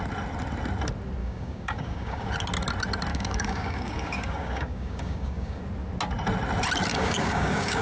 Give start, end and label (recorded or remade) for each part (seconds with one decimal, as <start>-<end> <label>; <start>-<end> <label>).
0.0-1.2 recorded; 1.2-2.3 remade; 2.3-3.1 recorded; 3.1-5.6 remade; 5.6-6.9 recorded; 6.9-7.8 remade